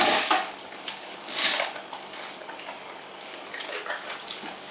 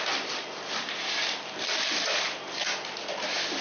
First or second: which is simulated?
first